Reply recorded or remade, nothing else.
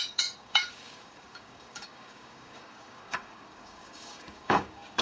remade